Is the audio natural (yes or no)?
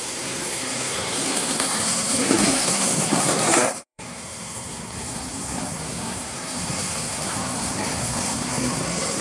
no